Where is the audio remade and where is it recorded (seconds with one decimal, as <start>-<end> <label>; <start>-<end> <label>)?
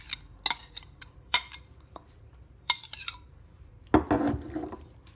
0.0-0.6 recorded; 0.6-3.7 remade; 3.7-5.1 recorded